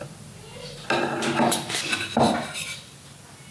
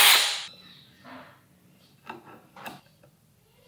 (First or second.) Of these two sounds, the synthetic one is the second